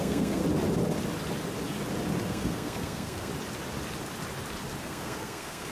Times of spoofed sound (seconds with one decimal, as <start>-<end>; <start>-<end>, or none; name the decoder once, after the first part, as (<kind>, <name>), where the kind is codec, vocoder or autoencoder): 0.0-0.4 (codec, SNAC); 2.2-3.3; 4.8-5.7